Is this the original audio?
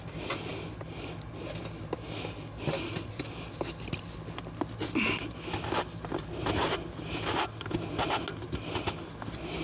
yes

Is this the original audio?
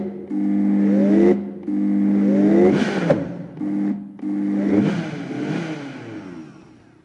yes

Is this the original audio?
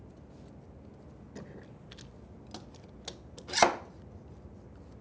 yes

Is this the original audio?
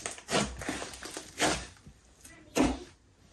yes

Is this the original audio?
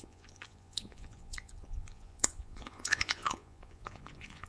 no